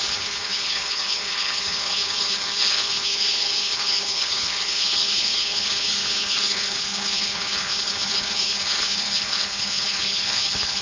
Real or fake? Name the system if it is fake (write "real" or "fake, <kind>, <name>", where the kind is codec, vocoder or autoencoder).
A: fake, codec, HILCodec